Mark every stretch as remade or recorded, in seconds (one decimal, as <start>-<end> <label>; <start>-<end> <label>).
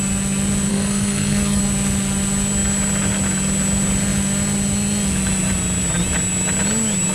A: 0.0-0.7 recorded; 0.7-1.6 remade; 1.6-7.1 recorded